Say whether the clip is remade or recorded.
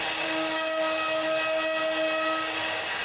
recorded